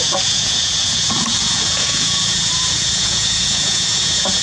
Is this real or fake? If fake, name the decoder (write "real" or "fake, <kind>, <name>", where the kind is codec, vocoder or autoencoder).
fake, vocoder, Vocos